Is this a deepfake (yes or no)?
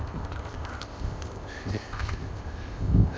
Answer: yes